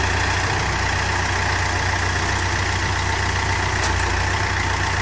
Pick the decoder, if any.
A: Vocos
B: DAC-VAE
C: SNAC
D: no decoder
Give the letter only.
D